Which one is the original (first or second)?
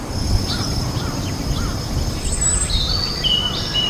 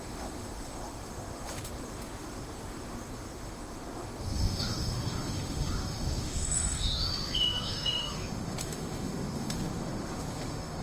first